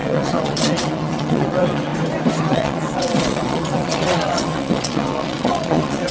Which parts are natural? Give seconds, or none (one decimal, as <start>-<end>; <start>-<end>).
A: 1.9-2.4